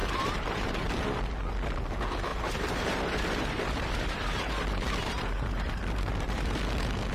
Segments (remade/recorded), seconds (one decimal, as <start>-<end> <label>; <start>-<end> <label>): 0.0-0.9 remade; 0.9-2.3 recorded; 2.3-6.6 remade; 6.6-7.1 recorded

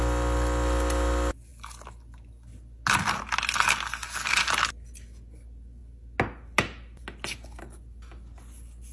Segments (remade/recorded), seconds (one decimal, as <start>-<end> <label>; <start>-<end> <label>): 0.0-8.9 recorded